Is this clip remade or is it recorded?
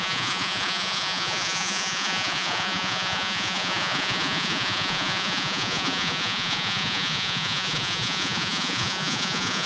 remade